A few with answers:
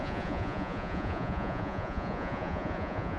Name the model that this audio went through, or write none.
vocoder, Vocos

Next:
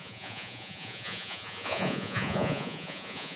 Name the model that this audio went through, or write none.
vocoder, Vocos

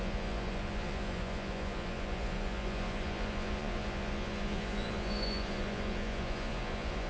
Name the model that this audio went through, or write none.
vocoder, Vocos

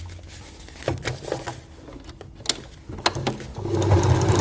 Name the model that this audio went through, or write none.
none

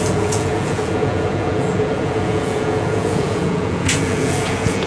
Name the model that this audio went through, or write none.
vocoder, Vocos